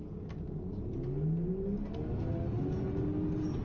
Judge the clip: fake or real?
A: real